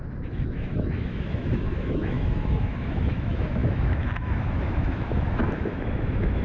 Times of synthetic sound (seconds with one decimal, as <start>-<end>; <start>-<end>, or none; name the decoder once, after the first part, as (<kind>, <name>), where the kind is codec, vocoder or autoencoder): 0.0-6.4 (autoencoder, DAC-VAE)